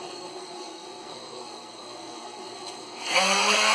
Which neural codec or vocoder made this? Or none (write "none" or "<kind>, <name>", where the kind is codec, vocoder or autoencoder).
codec, SNAC